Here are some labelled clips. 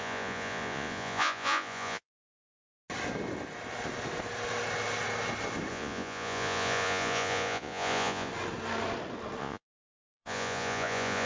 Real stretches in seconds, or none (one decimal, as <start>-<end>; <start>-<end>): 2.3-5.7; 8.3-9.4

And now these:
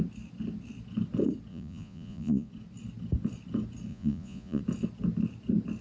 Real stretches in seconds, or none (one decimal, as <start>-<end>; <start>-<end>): 0.0-1.5; 2.5-3.9; 4.6-5.8

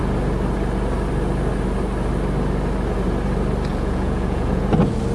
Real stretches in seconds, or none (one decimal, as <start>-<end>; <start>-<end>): 0.0-3.7; 4.6-5.1